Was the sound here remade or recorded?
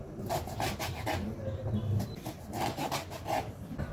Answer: recorded